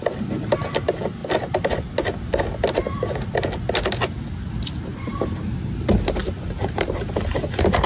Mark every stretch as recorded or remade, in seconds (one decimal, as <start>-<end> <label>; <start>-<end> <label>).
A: 0.0-7.9 recorded

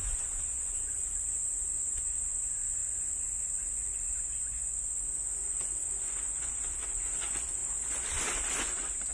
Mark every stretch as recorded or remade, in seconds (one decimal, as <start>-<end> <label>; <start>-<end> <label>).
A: 0.0-7.6 remade; 7.6-8.6 recorded; 8.6-9.1 remade

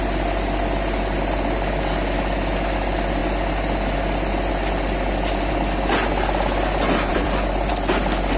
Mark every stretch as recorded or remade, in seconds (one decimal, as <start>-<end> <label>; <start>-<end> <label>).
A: 0.0-7.1 recorded; 7.1-7.7 remade; 7.7-8.4 recorded

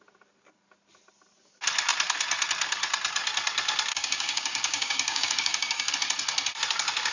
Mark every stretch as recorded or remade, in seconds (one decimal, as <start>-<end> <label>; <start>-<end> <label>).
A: 0.0-3.9 recorded; 3.9-5.9 remade; 5.9-7.1 recorded